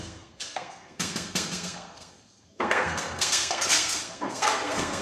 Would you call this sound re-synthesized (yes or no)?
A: yes